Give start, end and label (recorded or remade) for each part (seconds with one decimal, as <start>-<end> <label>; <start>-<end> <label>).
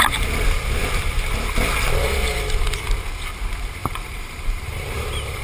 0.0-3.8 recorded; 3.8-5.4 remade